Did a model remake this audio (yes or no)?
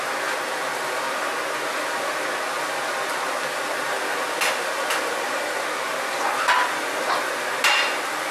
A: no